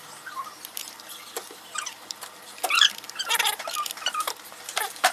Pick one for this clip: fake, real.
fake